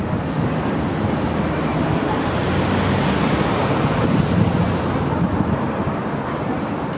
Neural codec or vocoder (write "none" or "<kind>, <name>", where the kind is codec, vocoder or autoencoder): none